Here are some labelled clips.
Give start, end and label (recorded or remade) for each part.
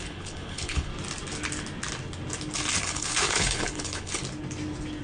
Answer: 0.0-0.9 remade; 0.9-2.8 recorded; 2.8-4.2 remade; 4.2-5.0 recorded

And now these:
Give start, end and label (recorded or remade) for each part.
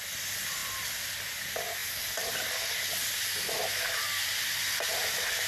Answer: 0.0-5.5 recorded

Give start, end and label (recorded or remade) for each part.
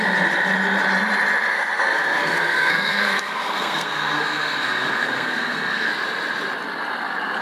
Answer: 0.0-1.5 recorded; 1.5-5.9 remade; 5.9-7.4 recorded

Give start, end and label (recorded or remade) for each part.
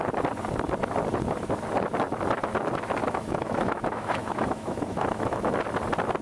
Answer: 0.0-3.0 recorded; 3.0-5.5 remade; 5.5-6.2 recorded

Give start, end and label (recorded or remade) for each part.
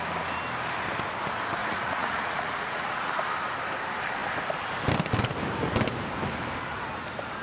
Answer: 0.0-1.6 recorded; 1.6-3.1 remade; 3.1-7.4 recorded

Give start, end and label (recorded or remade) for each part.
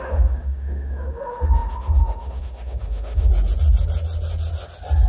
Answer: 0.0-3.3 remade; 3.3-5.1 recorded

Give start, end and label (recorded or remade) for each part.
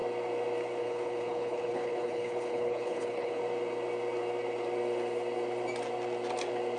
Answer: 0.0-0.8 recorded; 0.8-3.4 remade; 3.4-6.8 recorded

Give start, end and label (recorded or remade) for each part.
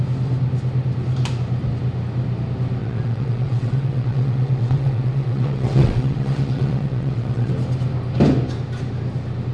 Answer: 0.0-2.8 recorded; 2.8-7.5 remade; 7.5-9.5 recorded